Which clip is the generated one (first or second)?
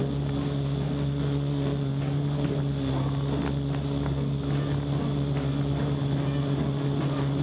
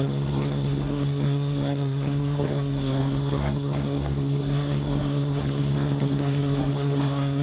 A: second